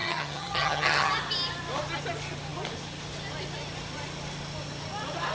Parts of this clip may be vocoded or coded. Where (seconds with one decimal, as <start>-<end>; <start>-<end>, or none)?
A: 0.0-1.1